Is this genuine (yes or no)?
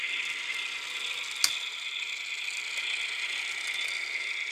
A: yes